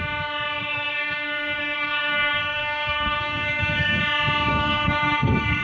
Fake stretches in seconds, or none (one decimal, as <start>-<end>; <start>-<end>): 0.6-4.0; 4.5-5.6